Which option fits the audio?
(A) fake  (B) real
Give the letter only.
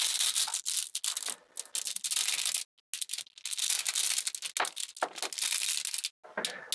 B